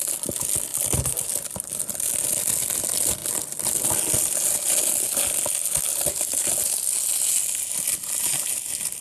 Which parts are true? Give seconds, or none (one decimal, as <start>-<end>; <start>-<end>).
0.0-9.0